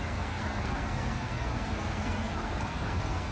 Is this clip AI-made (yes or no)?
yes